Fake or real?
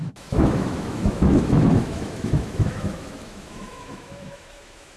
fake